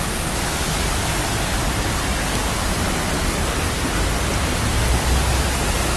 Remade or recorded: recorded